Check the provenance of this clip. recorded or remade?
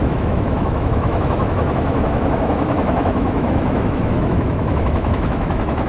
remade